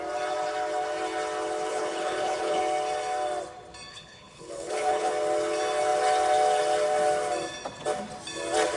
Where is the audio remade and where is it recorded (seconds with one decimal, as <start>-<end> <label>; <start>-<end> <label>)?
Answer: 0.0-1.7 recorded; 1.7-2.6 remade; 2.6-3.9 recorded; 3.9-5.1 remade; 5.1-8.8 recorded